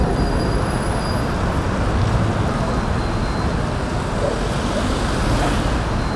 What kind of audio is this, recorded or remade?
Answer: recorded